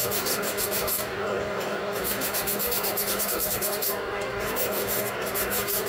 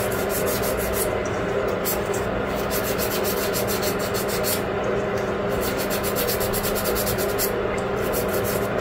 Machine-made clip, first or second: first